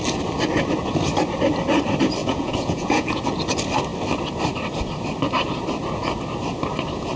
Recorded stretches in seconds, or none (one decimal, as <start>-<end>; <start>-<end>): 0.0-2.2; 3.2-7.2